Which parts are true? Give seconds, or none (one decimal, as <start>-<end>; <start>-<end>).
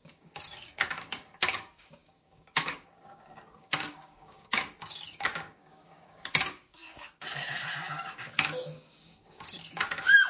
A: none